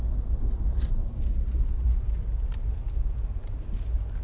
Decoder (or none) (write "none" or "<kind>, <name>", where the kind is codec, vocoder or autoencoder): none